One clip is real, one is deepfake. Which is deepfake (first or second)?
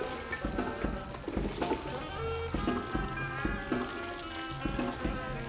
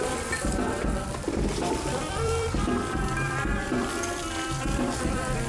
second